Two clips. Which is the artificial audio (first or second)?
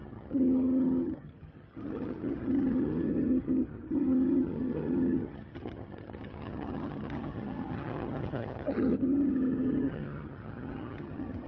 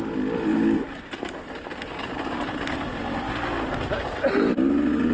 first